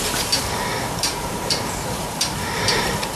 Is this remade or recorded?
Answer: remade